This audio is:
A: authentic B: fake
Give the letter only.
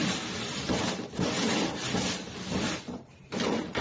A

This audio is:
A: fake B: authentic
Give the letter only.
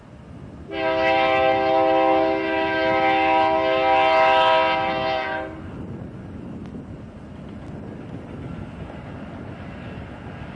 B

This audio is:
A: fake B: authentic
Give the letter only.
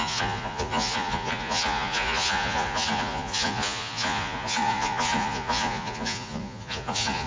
A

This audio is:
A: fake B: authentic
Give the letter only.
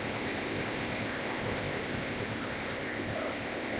A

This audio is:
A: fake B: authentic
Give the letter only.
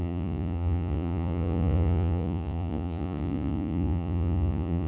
A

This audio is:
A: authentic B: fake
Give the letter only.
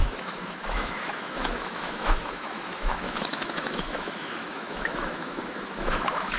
B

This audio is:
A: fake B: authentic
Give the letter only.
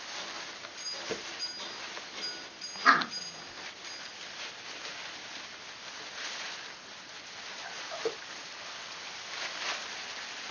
B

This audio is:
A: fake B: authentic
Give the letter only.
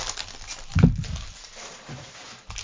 B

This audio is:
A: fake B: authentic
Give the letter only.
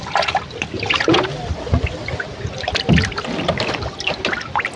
B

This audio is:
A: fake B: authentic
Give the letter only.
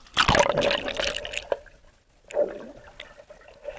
B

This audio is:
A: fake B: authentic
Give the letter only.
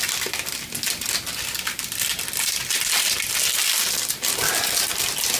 B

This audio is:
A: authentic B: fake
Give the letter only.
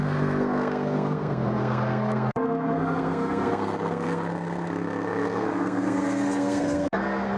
B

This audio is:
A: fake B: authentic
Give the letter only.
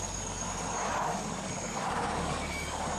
A